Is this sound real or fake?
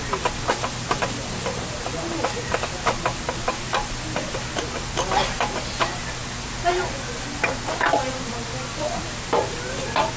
real